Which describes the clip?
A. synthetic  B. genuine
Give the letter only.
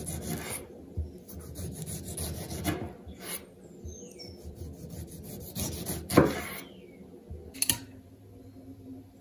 B